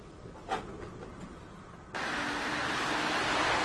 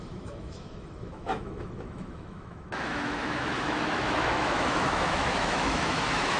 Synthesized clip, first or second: second